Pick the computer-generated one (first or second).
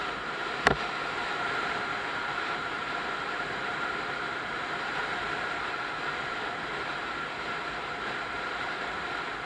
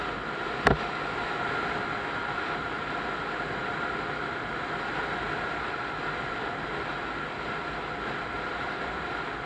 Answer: first